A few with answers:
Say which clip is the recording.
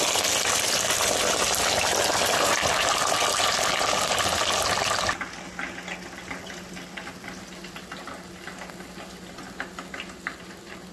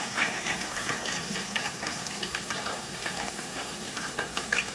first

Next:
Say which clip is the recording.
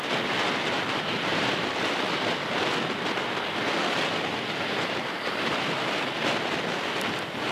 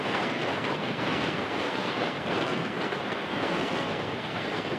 first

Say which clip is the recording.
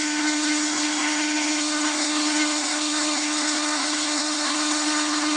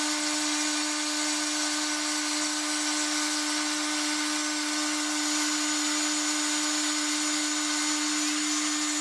second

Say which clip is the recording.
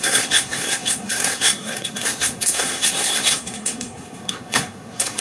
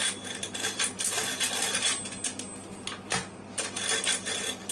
second